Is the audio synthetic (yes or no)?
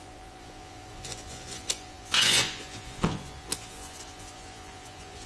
yes